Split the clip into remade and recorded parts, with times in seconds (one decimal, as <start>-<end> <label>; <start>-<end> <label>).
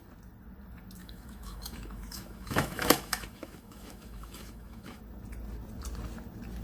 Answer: 0.0-1.0 recorded; 1.0-5.0 remade; 5.0-6.6 recorded